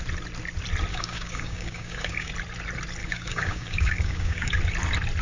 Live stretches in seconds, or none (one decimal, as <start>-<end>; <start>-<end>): 0.0-0.9; 2.3-3.0; 4.6-5.2